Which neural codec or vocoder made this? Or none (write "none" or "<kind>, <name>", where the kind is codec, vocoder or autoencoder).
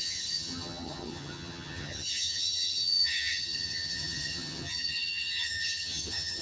vocoder, HiFi-GAN